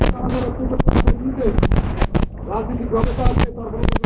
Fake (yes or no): yes